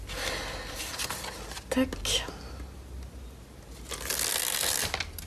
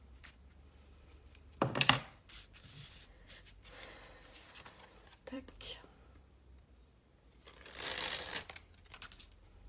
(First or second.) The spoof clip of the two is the second